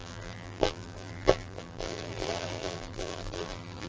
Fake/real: fake